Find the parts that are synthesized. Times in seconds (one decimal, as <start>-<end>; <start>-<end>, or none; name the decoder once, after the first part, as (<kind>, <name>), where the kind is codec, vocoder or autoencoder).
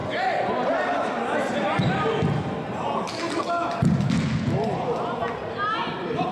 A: none